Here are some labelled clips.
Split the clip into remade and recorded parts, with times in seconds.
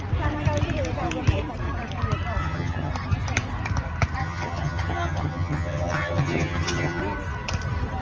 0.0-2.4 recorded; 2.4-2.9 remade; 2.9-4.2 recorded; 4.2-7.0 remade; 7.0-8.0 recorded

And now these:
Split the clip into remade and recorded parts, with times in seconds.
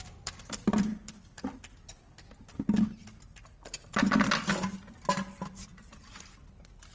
0.0-6.9 recorded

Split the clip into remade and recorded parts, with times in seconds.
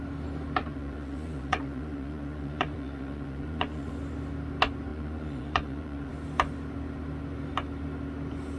0.0-0.6 recorded; 0.6-3.9 remade; 3.9-4.9 recorded; 4.9-6.1 remade; 6.1-8.6 recorded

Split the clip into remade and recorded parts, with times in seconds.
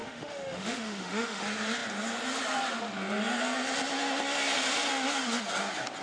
0.0-1.4 remade; 1.4-6.0 recorded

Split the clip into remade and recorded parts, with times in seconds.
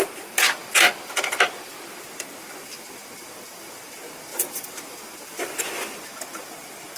0.0-0.6 remade; 0.6-2.0 recorded; 2.0-7.0 remade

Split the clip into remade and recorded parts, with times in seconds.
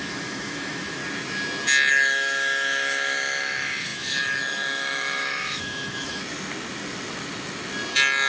0.0-1.0 remade; 1.0-1.9 recorded; 1.9-6.2 remade; 6.2-8.3 recorded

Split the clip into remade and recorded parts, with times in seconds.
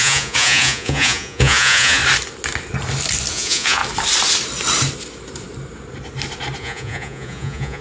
0.0-2.0 remade; 2.0-3.3 recorded; 3.3-3.8 remade; 3.8-6.6 recorded; 6.6-7.8 remade